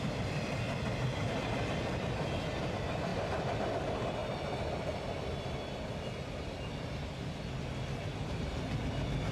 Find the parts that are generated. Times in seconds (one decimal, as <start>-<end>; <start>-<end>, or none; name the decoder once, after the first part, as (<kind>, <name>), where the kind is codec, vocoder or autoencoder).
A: 0.0-4.2 (vocoder, BigVGAN v2)